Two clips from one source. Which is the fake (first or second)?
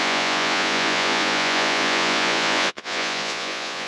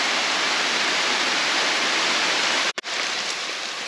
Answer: first